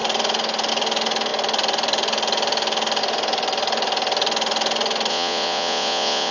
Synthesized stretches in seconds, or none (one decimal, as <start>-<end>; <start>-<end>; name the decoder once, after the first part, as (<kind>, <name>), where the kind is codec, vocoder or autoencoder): 5.1-6.3 (vocoder, Vocos)